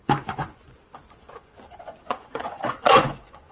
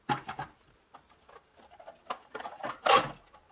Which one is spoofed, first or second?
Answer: first